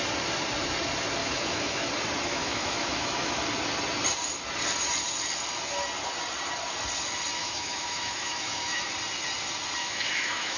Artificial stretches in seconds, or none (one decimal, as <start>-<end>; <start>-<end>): 1.2-1.9; 2.3-3.4; 7.4-8.9; 9.8-10.6